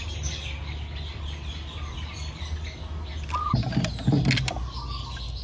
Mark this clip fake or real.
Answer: real